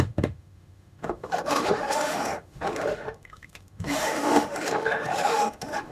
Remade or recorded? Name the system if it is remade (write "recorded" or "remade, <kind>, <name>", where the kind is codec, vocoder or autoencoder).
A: remade, autoencoder, DAC-VAE